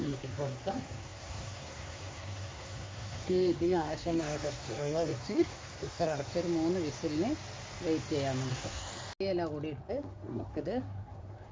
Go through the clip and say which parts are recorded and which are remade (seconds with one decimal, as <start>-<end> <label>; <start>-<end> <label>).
0.0-6.3 remade; 6.3-8.5 recorded; 8.5-8.9 remade; 8.9-9.9 recorded; 9.9-11.5 remade